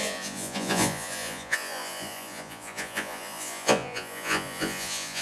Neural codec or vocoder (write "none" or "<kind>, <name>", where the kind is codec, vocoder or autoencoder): vocoder, Vocos